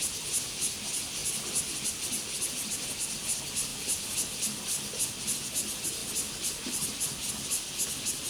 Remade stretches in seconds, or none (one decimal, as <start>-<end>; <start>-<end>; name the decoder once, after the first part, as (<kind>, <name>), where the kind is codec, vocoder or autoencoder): 1.2-2.1 (vocoder, BigVGAN v2); 3.7-4.4